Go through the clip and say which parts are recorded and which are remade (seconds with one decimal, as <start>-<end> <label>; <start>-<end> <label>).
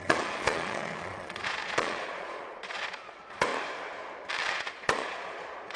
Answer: 0.0-3.5 remade; 3.5-4.5 recorded; 4.5-5.8 remade